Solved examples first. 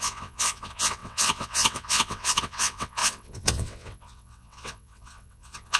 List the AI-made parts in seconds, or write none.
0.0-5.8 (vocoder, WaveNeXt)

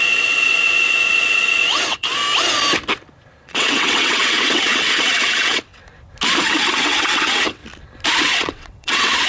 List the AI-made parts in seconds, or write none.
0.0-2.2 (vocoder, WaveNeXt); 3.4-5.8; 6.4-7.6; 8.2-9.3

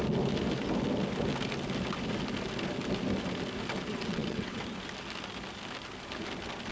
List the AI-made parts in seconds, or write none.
3.9-4.6 (vocoder, WaveNeXt)

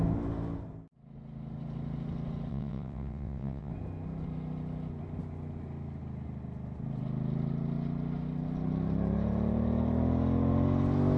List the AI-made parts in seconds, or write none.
2.5-3.7 (vocoder, WaveNeXt)